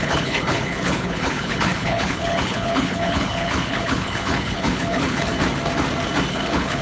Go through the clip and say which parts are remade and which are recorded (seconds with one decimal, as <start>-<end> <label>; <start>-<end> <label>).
0.0-5.3 remade; 5.3-6.3 recorded; 6.3-6.8 remade